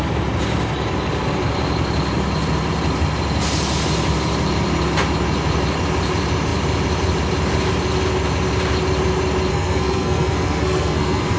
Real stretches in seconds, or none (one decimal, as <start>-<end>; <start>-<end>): 0.0-9.5